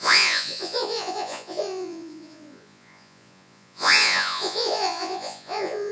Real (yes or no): no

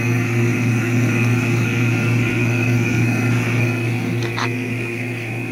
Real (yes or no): no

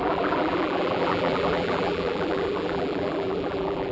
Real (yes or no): no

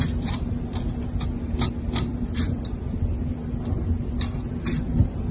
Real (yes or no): yes